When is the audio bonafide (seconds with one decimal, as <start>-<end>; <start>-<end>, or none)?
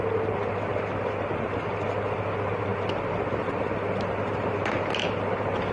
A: 0.0-5.7